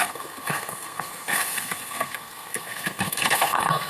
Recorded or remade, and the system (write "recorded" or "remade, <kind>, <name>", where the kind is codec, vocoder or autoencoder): remade, codec, SNAC